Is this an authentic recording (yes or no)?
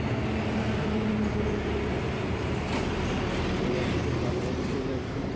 yes